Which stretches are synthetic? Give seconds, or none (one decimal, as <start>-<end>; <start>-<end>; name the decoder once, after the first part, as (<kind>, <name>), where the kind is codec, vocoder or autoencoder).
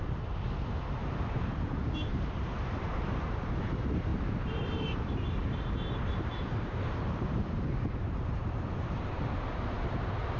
0.0-10.4 (vocoder, BigVGAN v2)